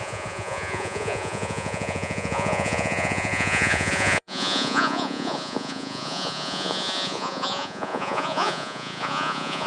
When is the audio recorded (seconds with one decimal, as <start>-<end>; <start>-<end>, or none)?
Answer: none